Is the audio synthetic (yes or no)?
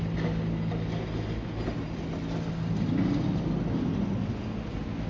no